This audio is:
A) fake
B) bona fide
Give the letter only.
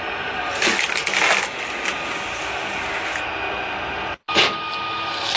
B